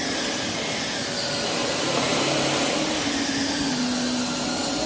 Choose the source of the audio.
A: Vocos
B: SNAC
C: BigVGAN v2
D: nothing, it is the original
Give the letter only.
D